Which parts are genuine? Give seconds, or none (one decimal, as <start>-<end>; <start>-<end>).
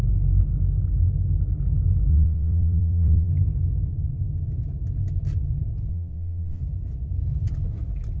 0.0-2.1; 3.3-5.9; 6.6-8.2